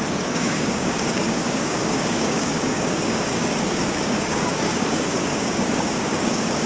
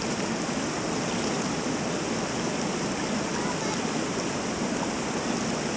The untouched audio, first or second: second